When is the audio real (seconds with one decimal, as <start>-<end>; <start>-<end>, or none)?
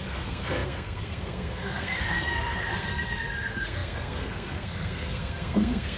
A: none